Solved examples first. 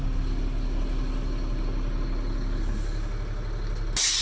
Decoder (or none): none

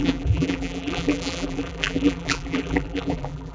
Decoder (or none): vocoder, BigVGAN v2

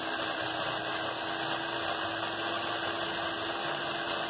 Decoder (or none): none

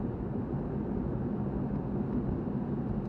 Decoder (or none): none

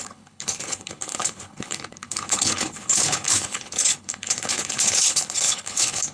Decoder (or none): codec, HILCodec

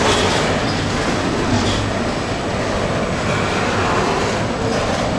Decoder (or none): none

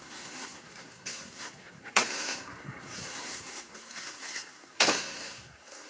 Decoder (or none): codec, SNAC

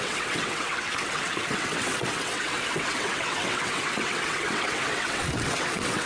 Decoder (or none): vocoder, WaveNeXt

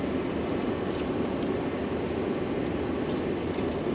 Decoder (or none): none